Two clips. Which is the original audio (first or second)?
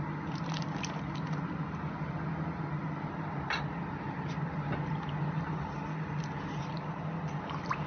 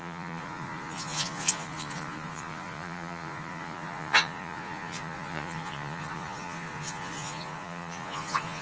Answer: first